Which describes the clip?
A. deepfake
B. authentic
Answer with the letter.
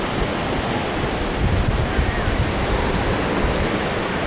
B